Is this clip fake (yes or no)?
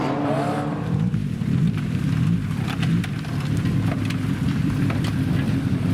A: yes